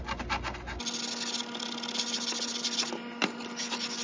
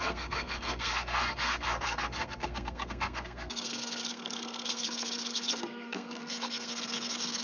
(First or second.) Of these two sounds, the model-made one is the second